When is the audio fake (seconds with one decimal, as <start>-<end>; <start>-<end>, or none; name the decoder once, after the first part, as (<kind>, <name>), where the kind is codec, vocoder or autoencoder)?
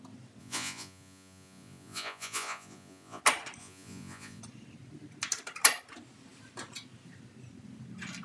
0.4-3.2 (vocoder, Vocos); 3.6-4.4